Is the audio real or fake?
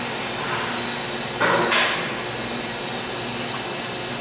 real